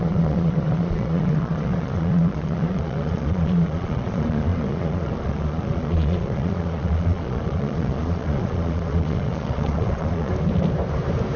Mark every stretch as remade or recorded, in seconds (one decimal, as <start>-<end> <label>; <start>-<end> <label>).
0.0-10.3 remade; 10.3-11.4 recorded